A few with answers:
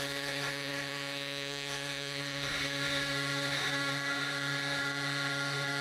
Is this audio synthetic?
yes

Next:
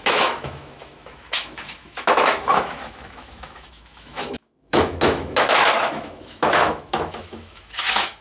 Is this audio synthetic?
yes